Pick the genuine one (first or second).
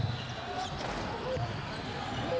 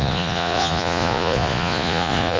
first